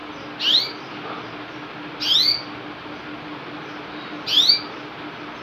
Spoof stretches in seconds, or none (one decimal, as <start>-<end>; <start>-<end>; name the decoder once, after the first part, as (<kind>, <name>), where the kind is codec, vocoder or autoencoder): none